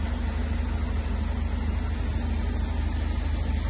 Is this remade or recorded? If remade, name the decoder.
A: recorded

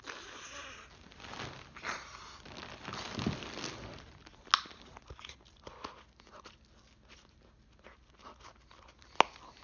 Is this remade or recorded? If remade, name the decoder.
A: recorded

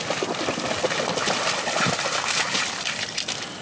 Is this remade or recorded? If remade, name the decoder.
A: recorded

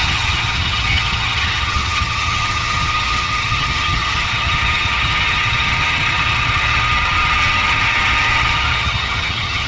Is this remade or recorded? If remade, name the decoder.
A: remade, vocoder, HiFi-GAN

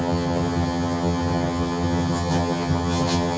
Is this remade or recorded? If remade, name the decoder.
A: remade, vocoder, HiFi-GAN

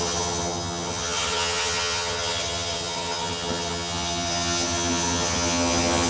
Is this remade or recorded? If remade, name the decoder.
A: remade, vocoder, HiFi-GAN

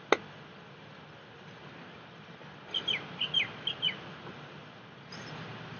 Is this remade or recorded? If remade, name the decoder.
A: recorded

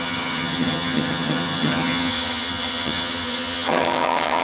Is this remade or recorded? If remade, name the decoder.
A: remade, vocoder, HiFi-GAN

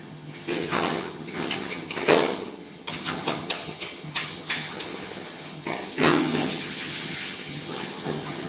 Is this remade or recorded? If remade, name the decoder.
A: remade, vocoder, HiFi-GAN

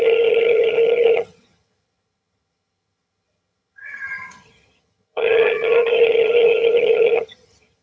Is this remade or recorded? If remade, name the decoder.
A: remade, vocoder, HiFi-GAN